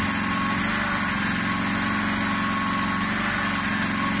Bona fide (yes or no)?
yes